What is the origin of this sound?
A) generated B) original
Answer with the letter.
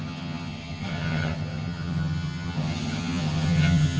A